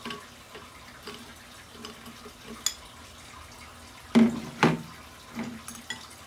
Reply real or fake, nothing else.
real